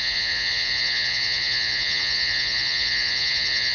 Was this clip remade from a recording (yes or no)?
yes